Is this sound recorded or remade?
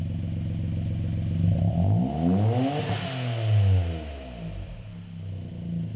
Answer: recorded